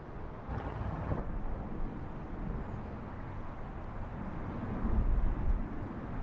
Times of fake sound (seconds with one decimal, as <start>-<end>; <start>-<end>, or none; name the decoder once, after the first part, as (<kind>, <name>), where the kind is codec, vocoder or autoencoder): 0.5-1.2 (vocoder, HiFi-GAN)